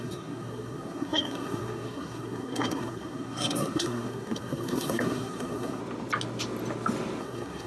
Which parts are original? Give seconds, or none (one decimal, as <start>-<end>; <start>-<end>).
5.8-7.2